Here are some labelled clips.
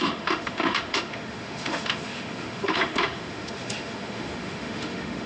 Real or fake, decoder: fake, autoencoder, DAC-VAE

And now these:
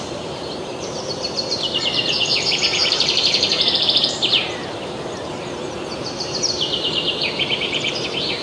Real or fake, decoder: fake, vocoder, BigVGAN v2